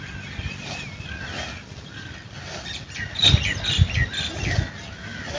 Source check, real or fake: real